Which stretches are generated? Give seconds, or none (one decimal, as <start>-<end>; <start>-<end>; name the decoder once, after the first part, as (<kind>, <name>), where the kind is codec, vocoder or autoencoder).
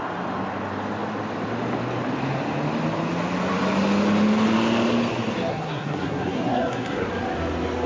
5.5-7.1 (codec, SNAC)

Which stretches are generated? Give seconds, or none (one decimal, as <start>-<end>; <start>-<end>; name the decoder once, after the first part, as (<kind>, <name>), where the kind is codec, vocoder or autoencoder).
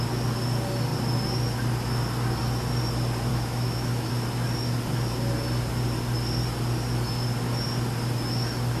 3.3-4.1 (autoencoder, DAC-VAE)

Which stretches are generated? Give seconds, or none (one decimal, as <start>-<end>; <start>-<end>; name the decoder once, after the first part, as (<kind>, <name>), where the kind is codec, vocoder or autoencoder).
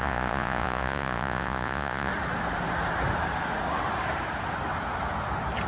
0.0-2.1 (vocoder, Vocos)